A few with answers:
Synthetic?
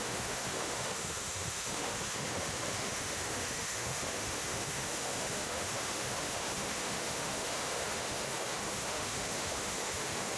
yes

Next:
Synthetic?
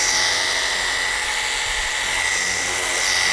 no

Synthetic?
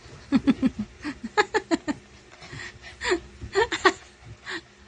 no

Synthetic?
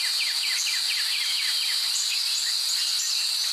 no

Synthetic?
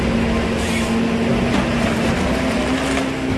no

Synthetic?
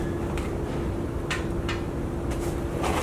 no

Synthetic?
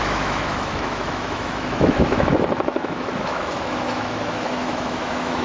yes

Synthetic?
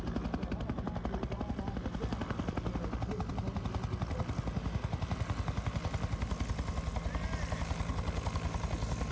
no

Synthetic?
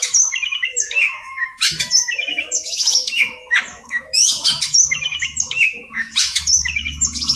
yes